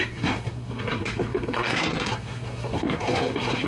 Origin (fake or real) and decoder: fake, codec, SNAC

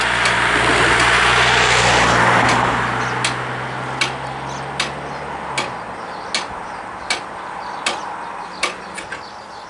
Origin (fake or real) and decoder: real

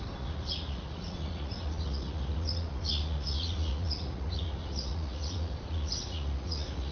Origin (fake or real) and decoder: fake, vocoder, Vocos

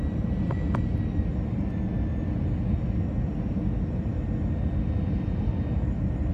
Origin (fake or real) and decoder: real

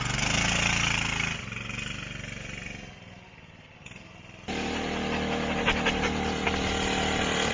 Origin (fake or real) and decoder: real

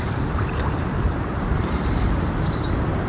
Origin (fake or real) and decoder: fake, vocoder, BigVGAN v2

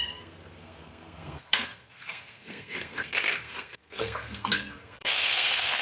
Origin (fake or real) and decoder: fake, codec, SNAC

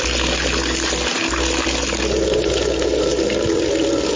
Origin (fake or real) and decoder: real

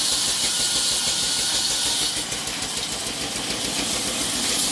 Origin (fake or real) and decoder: real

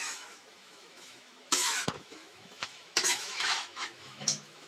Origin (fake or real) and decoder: fake, autoencoder, DAC-VAE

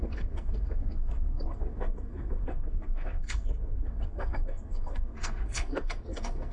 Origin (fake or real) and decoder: fake, codec, SNAC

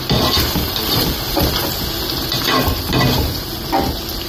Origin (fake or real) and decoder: real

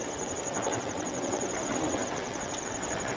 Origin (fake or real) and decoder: fake, vocoder, WaveNeXt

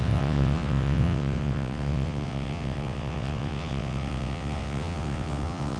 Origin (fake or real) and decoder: fake, vocoder, WaveNeXt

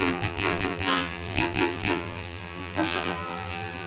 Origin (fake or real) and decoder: fake, vocoder, BigVGAN v2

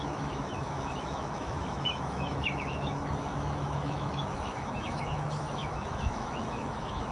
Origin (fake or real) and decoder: fake, autoencoder, DAC-VAE